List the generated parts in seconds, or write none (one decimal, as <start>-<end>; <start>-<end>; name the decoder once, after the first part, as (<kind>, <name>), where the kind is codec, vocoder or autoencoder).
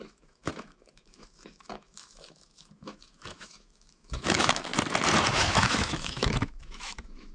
0.0-4.7 (autoencoder, DAC-VAE); 5.3-7.3